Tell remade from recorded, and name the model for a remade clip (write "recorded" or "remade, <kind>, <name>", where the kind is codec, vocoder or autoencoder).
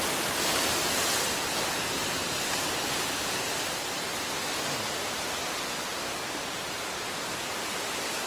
recorded